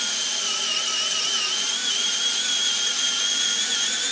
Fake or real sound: real